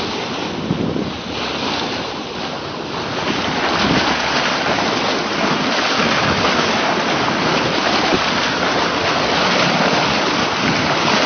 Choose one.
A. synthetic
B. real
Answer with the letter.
B